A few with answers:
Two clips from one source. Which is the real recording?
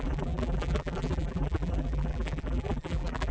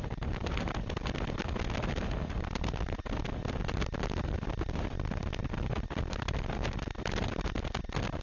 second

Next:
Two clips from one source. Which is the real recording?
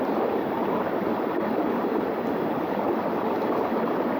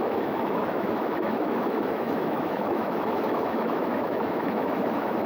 first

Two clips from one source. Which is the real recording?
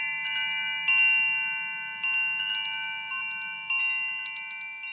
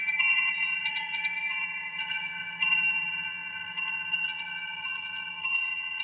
first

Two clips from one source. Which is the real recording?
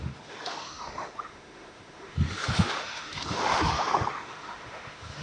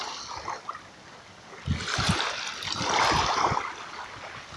second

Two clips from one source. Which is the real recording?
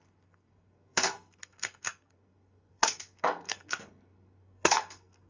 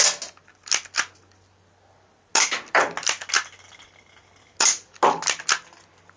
second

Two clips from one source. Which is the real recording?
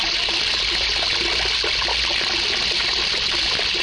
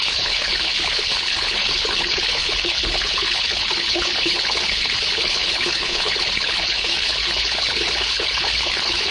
first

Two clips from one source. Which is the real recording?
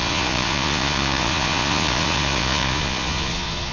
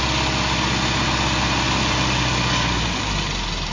second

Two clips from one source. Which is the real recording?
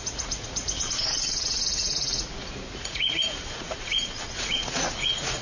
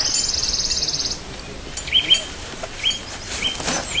second